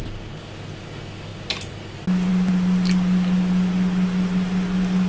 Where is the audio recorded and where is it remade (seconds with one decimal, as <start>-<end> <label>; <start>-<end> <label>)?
0.0-5.1 recorded

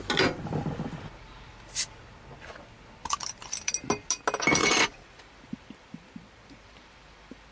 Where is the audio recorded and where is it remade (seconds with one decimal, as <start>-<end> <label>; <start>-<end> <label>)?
0.0-1.5 recorded; 1.5-2.0 remade; 2.0-3.0 recorded; 3.0-3.7 remade; 3.7-4.6 recorded; 4.6-7.5 remade